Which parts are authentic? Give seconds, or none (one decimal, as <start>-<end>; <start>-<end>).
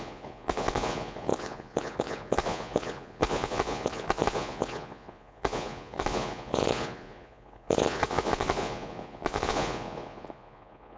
none